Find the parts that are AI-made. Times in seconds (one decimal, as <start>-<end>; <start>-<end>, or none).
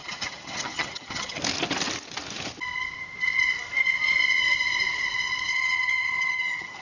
0.0-1.4; 5.5-6.8